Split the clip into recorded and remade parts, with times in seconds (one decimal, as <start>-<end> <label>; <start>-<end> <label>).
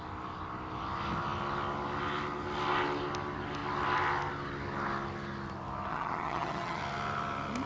0.0-5.9 recorded; 5.9-6.8 remade; 6.8-7.7 recorded